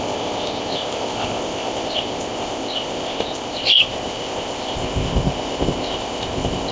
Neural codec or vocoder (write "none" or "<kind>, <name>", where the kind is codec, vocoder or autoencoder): codec, ZipCodec